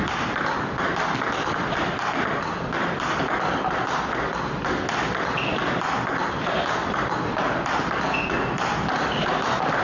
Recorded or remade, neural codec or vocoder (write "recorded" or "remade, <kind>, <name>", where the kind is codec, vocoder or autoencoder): recorded